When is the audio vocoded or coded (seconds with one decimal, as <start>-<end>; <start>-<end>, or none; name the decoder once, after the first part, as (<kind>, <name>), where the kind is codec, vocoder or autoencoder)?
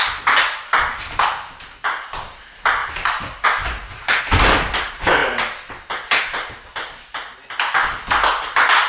none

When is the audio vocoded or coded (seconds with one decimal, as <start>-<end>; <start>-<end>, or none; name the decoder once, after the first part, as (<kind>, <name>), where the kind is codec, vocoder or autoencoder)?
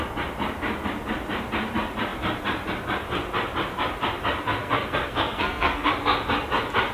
4.6-5.9 (codec, SNAC)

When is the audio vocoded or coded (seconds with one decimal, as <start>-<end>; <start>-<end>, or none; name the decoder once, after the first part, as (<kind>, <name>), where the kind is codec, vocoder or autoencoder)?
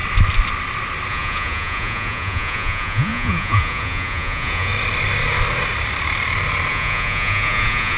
1.1-4.7 (vocoder, Vocos); 6.7-8.0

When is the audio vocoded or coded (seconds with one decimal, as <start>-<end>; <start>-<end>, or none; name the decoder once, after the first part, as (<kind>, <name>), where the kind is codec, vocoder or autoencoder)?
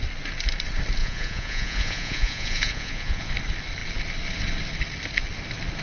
1.0-3.3 (vocoder, Vocos)